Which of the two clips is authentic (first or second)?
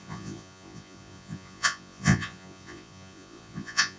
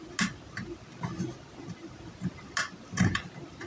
second